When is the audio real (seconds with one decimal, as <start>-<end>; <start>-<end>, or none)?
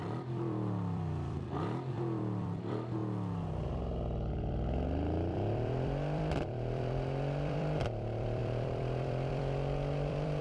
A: 3.0-4.3